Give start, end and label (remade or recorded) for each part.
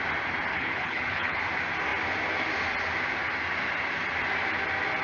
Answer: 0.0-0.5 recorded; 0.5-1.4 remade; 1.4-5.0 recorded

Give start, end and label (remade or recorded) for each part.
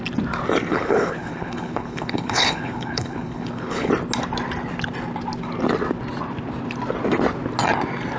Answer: 0.0-0.7 recorded; 0.7-3.9 remade; 3.9-8.2 recorded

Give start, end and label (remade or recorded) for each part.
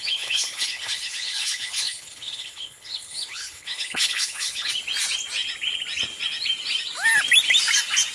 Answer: 0.0-4.7 remade; 4.7-8.1 recorded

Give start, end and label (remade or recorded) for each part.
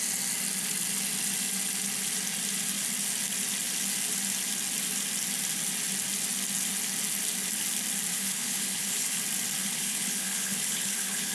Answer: 0.0-8.1 recorded; 8.1-9.2 remade; 9.2-9.6 recorded; 9.6-11.3 remade